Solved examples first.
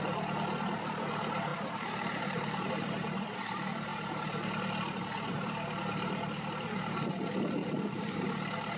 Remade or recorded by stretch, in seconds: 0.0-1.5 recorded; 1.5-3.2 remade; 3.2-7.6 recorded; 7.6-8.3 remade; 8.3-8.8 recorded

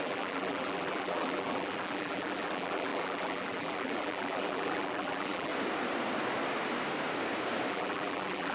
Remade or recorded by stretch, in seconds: 0.0-5.5 remade; 5.5-7.7 recorded; 7.7-8.5 remade

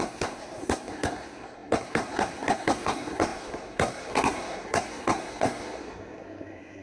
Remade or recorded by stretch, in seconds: 0.0-6.8 remade

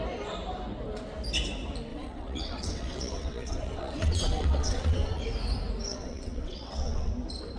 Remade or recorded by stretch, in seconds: 0.0-1.9 recorded; 1.9-5.2 remade; 5.2-5.9 recorded; 5.9-7.1 remade; 7.1-7.6 recorded

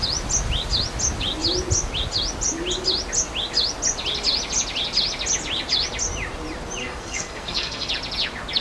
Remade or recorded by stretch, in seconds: 0.0-6.8 recorded; 6.8-7.9 remade; 7.9-8.6 recorded

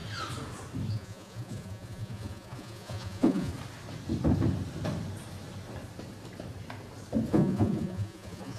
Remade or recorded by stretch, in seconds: 0.0-0.9 recorded; 0.9-3.5 remade; 3.5-7.3 recorded; 7.3-8.6 remade

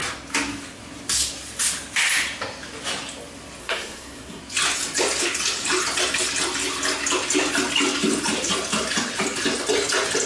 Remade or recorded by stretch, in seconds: 0.0-3.6 recorded; 3.6-4.4 remade; 4.4-10.3 recorded

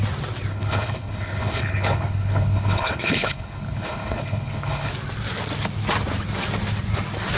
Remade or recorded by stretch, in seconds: 0.0-0.5 recorded; 0.5-4.9 remade; 4.9-7.4 recorded